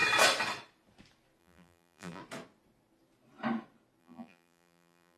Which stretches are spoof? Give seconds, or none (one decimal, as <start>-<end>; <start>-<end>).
1.4-2.2; 4.0-5.2